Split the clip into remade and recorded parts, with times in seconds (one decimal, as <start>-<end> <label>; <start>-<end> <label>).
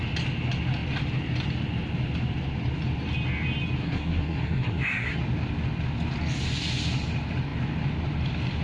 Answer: 0.0-3.8 recorded; 3.8-5.2 remade; 5.2-8.6 recorded